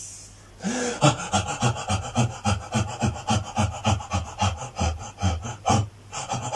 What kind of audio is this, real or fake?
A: real